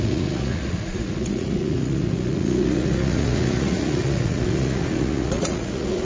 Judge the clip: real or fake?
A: fake